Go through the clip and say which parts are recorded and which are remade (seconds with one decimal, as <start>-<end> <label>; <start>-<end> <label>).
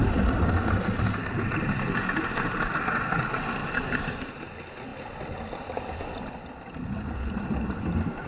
0.0-3.6 recorded; 3.6-4.4 remade; 4.4-8.3 recorded